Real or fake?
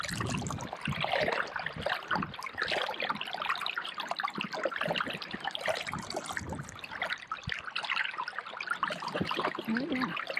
real